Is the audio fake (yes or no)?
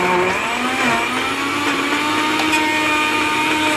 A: no